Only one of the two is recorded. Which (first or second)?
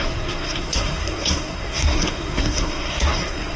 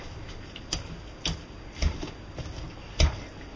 second